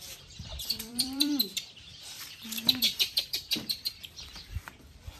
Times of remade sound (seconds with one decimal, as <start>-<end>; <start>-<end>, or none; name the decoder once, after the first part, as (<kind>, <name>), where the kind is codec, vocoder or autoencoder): 0.5-1.4 (vocoder, BigVGAN v2); 1.9-5.2